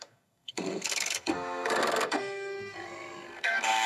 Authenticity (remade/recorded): remade